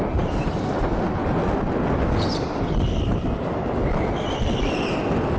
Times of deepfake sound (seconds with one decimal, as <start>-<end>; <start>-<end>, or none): none

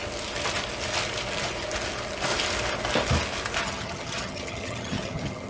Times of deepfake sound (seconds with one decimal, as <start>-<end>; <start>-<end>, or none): 3.6-5.5

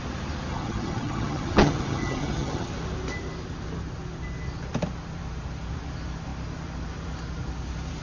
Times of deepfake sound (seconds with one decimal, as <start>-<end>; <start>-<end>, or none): 0.5-2.7

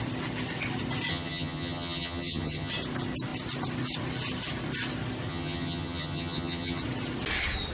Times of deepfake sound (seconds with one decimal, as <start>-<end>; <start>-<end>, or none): 1.1-2.7; 5.3-6.8

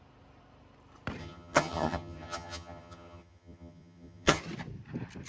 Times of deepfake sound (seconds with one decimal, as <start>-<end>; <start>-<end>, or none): 1.2-4.4

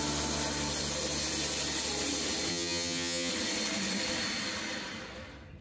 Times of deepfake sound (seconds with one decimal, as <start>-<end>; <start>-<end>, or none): 2.5-3.3